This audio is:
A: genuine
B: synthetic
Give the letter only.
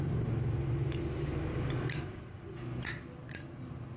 A